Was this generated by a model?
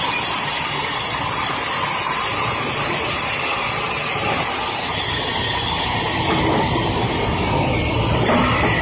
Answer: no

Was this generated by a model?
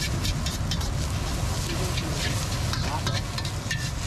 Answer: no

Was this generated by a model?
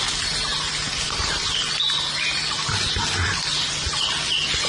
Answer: no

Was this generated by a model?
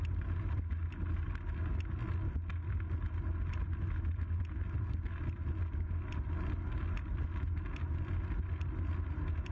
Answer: no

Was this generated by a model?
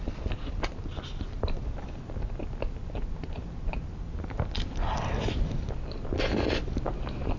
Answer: no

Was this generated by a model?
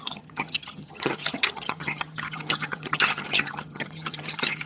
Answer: yes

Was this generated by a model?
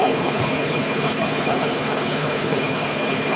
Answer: yes